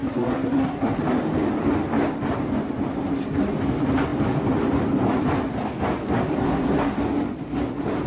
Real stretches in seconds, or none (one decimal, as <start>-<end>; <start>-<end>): 1.0-6.4; 7.0-8.1